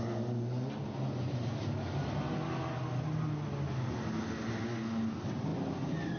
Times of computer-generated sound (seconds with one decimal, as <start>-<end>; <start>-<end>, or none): none